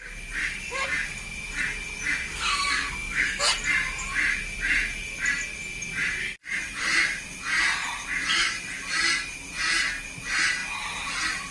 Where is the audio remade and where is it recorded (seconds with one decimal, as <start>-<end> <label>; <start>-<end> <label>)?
0.0-2.3 recorded; 2.3-3.4 remade; 3.4-11.5 recorded